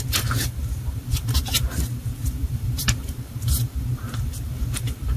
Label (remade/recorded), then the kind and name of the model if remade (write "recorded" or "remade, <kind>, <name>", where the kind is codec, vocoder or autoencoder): remade, vocoder, BigVGAN v2